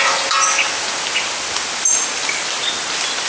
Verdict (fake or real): real